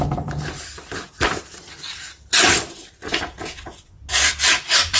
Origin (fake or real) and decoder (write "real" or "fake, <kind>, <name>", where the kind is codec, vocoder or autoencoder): real